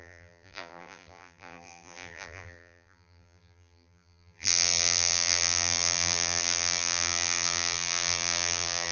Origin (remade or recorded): remade